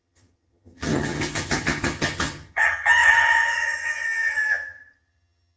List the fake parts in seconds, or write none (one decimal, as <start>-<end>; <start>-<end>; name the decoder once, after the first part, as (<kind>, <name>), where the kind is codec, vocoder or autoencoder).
0.0-5.6 (vocoder, HiFi-GAN)